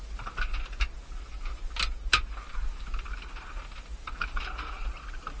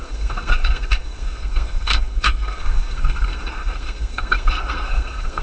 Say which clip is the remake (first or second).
second